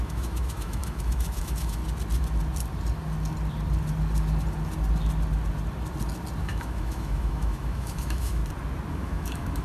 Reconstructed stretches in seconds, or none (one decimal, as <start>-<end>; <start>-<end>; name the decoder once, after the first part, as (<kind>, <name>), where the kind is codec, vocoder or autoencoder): 0.0-1.8 (autoencoder, DAC-VAE); 6.4-8.4; 8.9-9.6

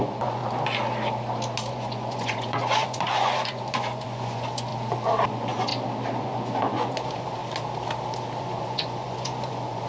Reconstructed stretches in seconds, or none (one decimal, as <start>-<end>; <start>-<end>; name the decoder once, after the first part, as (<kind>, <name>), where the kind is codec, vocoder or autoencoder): 0.0-0.4 (vocoder, Vocos); 1.7-4.7; 5.3-5.7; 6.2-7.4; 8.4-9.9

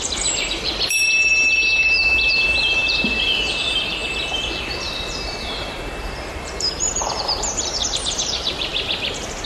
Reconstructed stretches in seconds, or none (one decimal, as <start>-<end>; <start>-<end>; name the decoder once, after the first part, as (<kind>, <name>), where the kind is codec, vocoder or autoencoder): 0.0-4.0 (vocoder, BigVGAN v2); 4.6-8.7

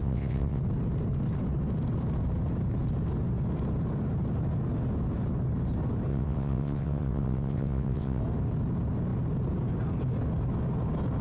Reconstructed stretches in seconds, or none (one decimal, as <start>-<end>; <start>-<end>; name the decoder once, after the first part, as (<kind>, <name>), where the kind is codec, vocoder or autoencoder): 0.0-0.6 (vocoder, WaveNeXt); 6.1-8.2

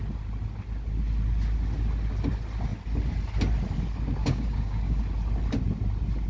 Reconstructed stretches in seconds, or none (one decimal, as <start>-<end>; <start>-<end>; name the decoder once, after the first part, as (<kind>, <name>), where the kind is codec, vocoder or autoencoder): 4.2-5.0 (codec, DAC)

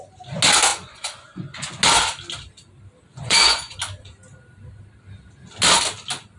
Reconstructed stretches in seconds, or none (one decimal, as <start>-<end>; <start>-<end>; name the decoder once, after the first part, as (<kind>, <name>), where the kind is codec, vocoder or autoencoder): 0.7-1.8 (vocoder, Vocos); 3.1-3.8

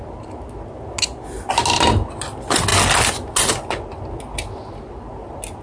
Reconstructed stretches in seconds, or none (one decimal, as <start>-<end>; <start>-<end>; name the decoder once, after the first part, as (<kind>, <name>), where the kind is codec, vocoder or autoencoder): none